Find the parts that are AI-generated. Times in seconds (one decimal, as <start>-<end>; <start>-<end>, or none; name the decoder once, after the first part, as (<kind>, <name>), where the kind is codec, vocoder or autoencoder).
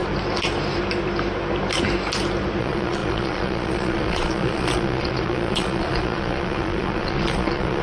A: 2.6-7.8 (vocoder, Vocos)